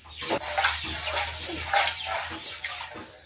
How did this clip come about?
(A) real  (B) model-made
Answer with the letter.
A